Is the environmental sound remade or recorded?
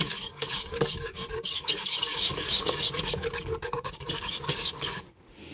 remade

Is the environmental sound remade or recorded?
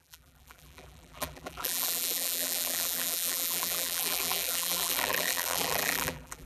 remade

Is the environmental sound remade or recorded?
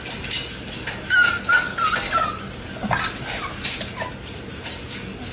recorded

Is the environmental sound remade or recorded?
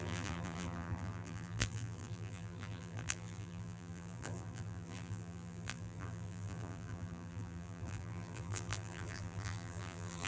remade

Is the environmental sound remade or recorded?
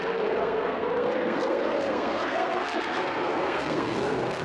remade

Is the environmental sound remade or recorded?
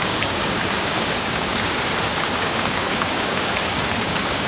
remade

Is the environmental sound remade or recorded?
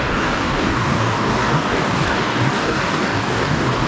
remade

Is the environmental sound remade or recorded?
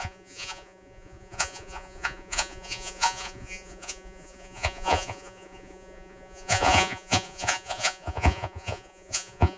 remade